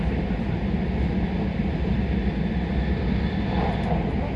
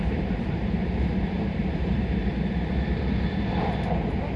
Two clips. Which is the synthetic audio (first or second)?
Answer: second